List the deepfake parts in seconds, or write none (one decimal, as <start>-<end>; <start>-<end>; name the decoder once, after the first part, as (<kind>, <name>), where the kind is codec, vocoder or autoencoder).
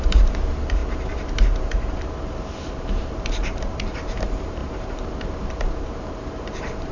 0.0-6.9 (vocoder, BigVGAN v2)